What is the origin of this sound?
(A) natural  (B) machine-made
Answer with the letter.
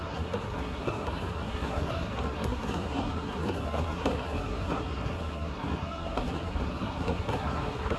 B